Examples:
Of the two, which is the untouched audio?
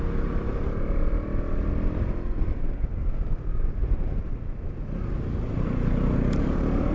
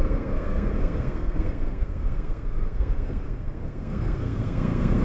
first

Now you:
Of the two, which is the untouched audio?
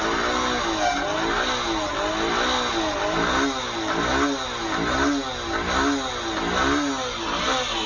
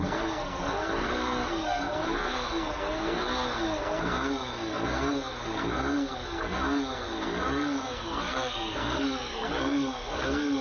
first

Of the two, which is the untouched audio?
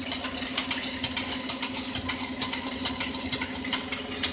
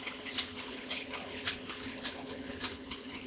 first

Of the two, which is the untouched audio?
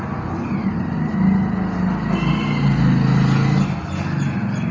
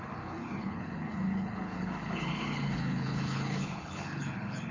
first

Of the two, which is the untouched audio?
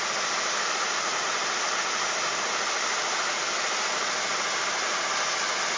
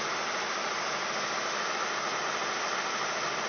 second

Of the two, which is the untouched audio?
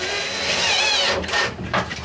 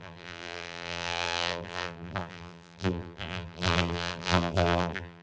first